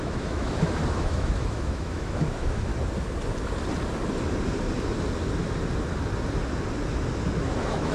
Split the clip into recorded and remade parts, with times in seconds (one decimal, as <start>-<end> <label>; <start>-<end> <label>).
0.0-2.7 remade; 2.7-7.4 recorded; 7.4-7.9 remade